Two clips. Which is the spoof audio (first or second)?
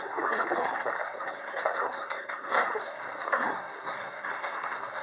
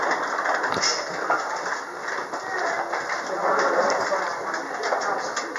first